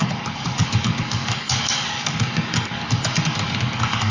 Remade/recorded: remade